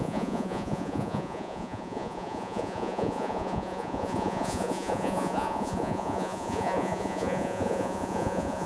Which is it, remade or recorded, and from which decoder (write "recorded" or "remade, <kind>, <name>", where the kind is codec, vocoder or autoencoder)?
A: remade, vocoder, Vocos